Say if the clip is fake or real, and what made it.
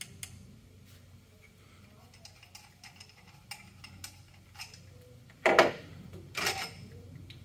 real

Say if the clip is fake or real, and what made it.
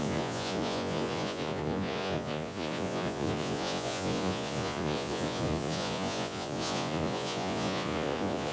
fake, vocoder, Vocos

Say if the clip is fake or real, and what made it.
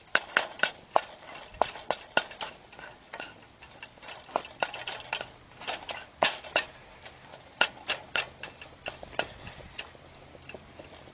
real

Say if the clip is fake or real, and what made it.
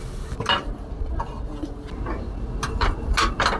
real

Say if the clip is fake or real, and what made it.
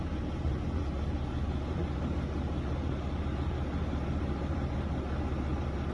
real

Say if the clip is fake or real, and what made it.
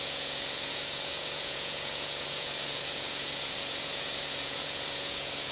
fake, vocoder, Vocos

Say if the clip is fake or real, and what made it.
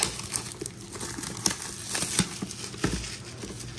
real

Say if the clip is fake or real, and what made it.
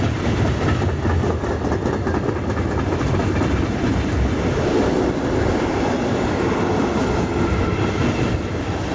real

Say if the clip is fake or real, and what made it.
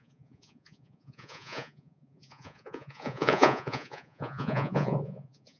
fake, vocoder, Vocos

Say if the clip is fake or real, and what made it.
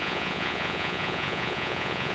fake, vocoder, Vocos